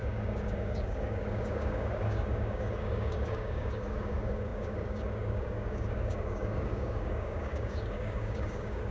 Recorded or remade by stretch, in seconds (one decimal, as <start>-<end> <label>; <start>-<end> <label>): 0.0-8.9 remade